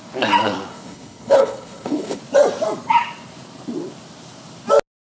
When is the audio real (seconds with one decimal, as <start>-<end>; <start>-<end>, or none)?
0.0-0.7; 2.2-5.0